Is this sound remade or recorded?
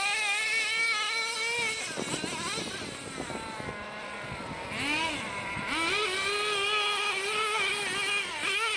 recorded